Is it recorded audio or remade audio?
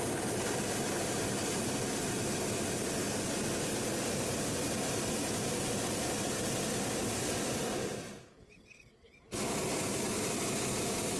recorded